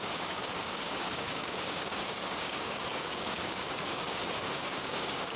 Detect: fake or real fake